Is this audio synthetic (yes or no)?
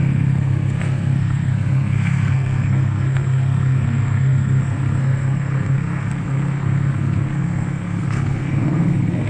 yes